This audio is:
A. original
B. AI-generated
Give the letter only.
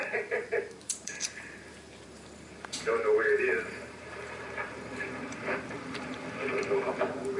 B